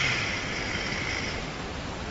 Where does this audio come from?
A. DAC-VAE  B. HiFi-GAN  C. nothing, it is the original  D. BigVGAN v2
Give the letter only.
C